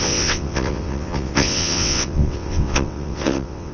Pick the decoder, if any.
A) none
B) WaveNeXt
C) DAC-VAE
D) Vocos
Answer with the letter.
B